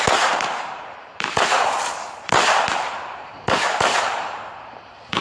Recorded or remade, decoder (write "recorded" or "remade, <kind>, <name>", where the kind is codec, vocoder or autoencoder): remade, vocoder, BigVGAN v2